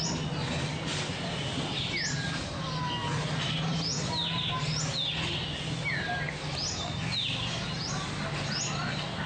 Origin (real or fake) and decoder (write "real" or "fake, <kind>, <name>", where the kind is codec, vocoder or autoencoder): real